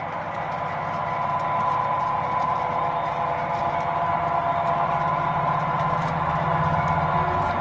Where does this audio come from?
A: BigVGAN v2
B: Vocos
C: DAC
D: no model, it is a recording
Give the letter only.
A